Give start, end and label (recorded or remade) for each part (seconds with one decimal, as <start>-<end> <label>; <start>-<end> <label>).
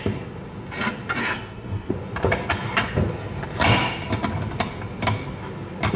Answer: 0.0-1.2 recorded; 1.2-1.9 remade; 1.9-6.0 recorded